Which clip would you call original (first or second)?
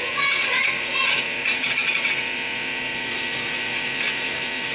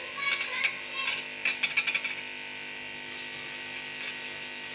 second